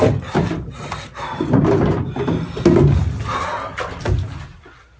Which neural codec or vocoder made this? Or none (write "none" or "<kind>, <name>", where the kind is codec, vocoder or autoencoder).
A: none